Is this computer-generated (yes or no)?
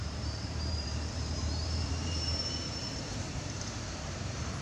yes